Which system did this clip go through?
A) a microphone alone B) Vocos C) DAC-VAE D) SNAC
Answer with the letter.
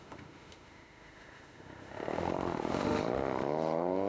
C